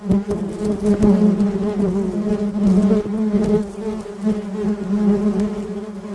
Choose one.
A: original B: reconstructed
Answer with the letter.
A